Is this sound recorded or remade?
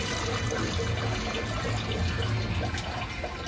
recorded